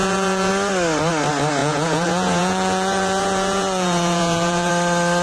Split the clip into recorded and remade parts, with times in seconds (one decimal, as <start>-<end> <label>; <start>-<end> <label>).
0.0-0.5 remade; 0.5-1.6 recorded; 1.6-4.7 remade; 4.7-5.2 recorded